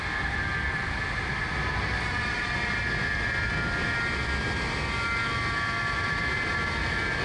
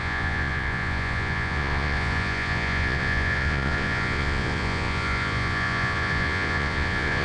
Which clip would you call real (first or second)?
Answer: first